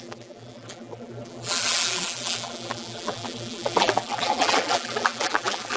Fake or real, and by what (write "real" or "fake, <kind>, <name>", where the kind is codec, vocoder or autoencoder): fake, vocoder, BigVGAN v2